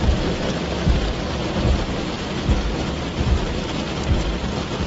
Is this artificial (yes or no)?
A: no